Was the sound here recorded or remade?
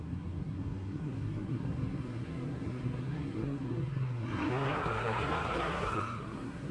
remade